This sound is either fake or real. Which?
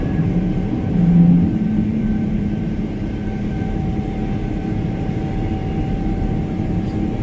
fake